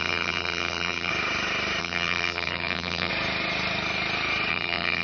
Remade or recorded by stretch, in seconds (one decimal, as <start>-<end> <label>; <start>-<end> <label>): 0.0-1.1 remade; 1.1-1.8 recorded; 1.8-3.1 remade; 3.1-4.5 recorded; 4.5-5.0 remade